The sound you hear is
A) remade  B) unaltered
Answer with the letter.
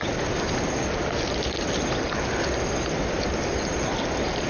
B